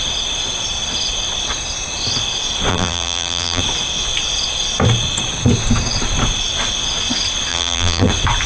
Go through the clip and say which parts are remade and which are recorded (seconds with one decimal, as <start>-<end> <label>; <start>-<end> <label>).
0.0-2.7 recorded; 2.7-3.6 remade; 3.6-7.5 recorded; 7.5-8.1 remade; 8.1-8.5 recorded